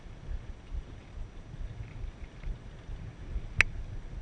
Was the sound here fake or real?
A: real